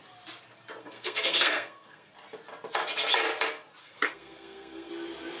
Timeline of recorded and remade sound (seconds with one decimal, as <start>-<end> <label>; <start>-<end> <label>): 0.0-0.8 recorded; 0.8-2.1 remade; 2.1-3.8 recorded; 3.8-4.9 remade; 4.9-5.4 recorded